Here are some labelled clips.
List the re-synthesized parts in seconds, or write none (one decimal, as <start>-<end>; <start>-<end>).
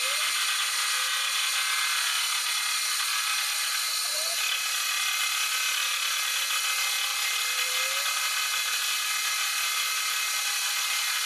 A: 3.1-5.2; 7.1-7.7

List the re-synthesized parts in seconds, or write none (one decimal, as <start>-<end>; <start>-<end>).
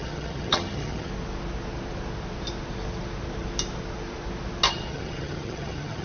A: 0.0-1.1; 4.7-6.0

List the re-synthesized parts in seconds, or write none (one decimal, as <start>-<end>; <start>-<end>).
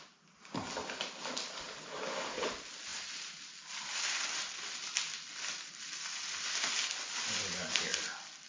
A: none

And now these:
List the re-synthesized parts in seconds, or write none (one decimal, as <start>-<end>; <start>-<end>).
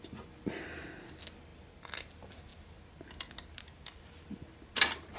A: none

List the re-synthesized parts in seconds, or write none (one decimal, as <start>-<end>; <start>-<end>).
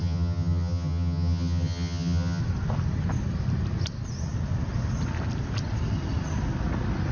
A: 0.0-2.4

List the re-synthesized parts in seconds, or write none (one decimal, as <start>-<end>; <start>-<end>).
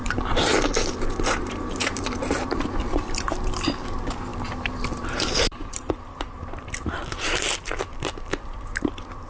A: 0.0-0.5; 1.4-7.0; 7.6-9.3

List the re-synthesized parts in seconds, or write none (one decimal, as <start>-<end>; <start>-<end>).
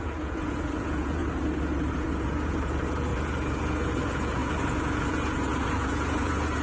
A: 0.0-1.2; 1.9-6.6